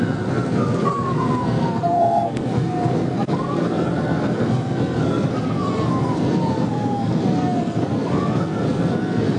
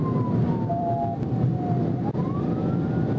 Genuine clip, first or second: second